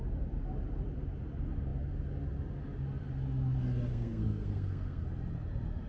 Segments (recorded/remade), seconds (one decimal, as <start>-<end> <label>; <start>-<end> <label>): 0.0-3.9 recorded; 3.9-5.0 remade; 5.0-5.9 recorded